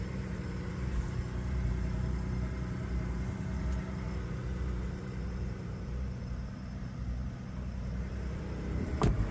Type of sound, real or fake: fake